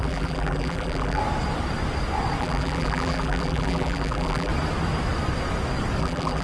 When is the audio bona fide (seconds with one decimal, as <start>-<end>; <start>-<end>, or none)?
1.2-2.4; 4.5-6.0